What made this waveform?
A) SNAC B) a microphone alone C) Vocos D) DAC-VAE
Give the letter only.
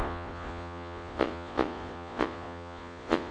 C